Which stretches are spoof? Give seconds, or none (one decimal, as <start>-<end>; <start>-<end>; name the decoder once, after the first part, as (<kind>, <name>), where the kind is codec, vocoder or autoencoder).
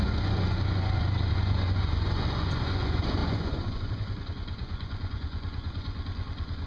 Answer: 0.0-6.7 (vocoder, Vocos)